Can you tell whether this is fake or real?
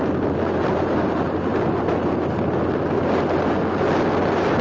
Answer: real